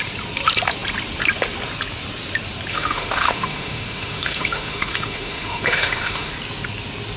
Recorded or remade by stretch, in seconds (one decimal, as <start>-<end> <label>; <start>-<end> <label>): 0.0-2.7 recorded; 2.7-6.3 remade; 6.3-7.2 recorded